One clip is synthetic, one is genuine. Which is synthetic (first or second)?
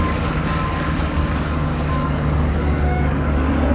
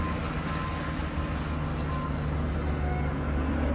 first